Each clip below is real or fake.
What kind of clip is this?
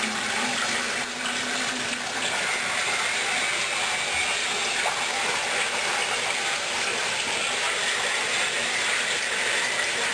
real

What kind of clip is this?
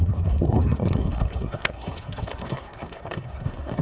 fake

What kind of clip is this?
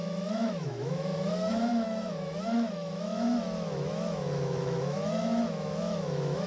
fake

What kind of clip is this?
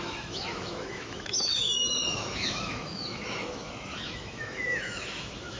fake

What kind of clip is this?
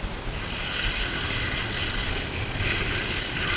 fake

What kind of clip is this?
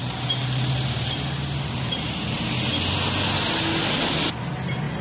real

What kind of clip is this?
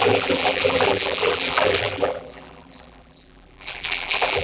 fake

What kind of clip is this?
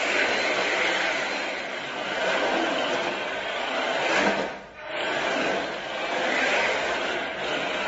real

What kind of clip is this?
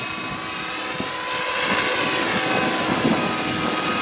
real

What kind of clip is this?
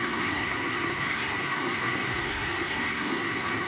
fake